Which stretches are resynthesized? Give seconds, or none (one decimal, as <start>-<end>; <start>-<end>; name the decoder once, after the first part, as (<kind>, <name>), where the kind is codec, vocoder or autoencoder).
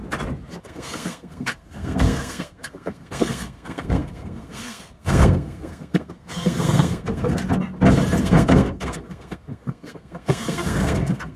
0.6-7.4 (codec, SNAC); 8.2-11.4